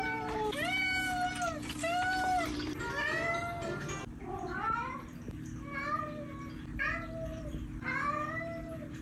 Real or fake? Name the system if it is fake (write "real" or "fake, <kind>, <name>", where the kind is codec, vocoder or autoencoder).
fake, vocoder, BigVGAN v2